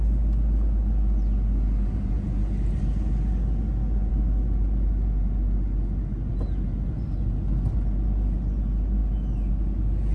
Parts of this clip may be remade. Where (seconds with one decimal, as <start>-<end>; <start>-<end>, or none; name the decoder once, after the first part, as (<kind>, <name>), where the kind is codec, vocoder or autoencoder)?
none